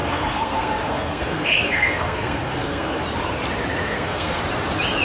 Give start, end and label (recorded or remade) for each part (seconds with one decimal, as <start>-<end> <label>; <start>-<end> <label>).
0.0-3.0 remade; 3.0-3.8 recorded; 3.8-4.4 remade; 4.4-5.0 recorded